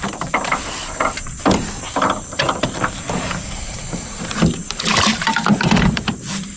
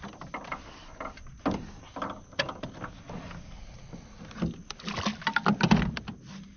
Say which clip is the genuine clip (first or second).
second